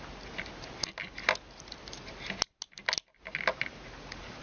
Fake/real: real